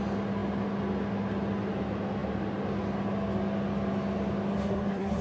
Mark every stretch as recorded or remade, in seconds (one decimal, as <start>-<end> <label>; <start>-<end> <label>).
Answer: 0.0-4.5 recorded; 4.5-5.2 remade